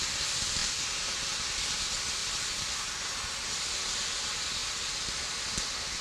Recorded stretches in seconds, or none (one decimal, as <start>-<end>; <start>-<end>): 0.0-0.6; 1.6-2.2; 3.7-6.0

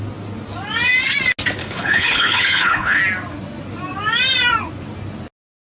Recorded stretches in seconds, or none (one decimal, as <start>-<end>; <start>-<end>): 0.0-1.6; 3.0-5.6

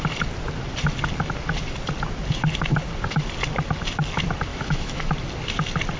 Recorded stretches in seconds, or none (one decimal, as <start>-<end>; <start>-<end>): 0.0-4.5; 5.1-6.0

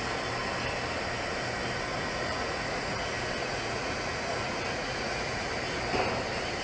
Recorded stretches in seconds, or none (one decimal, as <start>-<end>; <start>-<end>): 0.0-1.9; 3.0-3.4; 5.5-6.6

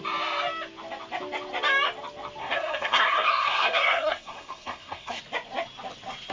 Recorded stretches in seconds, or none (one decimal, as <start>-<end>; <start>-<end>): 0.0-2.4; 5.2-6.3

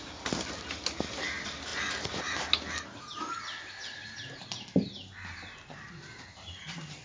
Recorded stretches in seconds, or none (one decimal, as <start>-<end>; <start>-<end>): 0.0-7.0

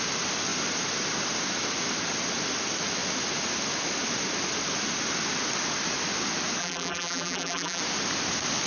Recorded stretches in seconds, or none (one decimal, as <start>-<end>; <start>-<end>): 0.0-6.6; 7.8-8.7